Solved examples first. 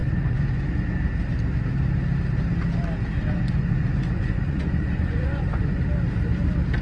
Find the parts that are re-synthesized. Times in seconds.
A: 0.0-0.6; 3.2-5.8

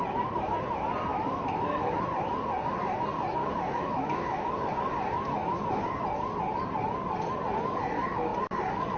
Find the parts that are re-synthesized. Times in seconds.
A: 1.1-2.0; 3.4-4.7